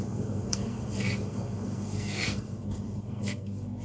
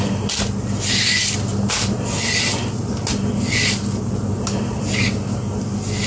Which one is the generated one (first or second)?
first